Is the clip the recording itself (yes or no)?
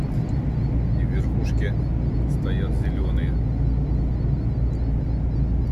yes